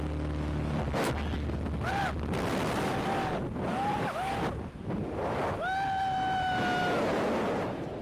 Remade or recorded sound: recorded